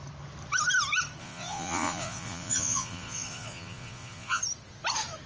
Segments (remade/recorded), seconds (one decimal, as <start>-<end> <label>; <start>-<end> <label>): 0.0-1.2 recorded; 1.2-4.4 remade; 4.4-5.3 recorded